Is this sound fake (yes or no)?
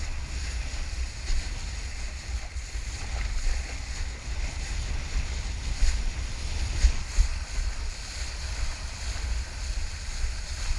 no